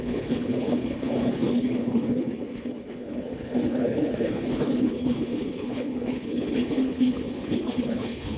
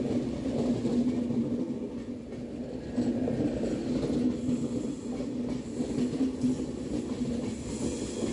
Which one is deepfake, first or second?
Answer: first